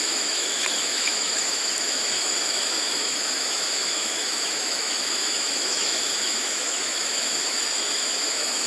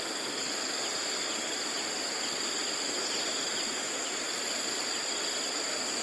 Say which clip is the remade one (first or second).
first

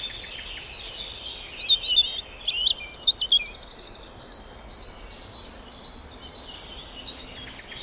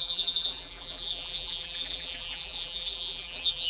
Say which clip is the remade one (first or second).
second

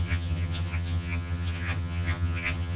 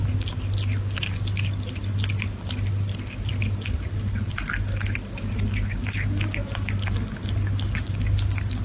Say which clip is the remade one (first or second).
first